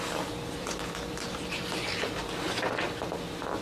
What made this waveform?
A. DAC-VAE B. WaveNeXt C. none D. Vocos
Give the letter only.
C